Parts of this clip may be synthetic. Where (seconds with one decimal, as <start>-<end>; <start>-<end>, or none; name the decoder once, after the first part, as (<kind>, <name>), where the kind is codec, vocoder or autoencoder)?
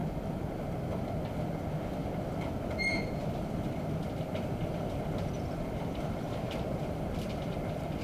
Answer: 0.0-0.6 (vocoder, BigVGAN v2); 2.0-2.7; 3.2-7.5